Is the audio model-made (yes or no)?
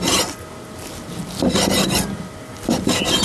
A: no